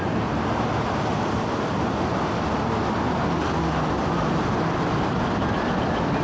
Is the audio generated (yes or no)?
no